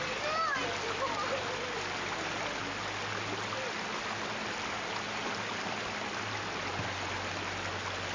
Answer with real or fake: real